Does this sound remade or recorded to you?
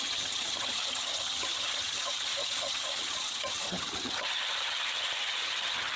remade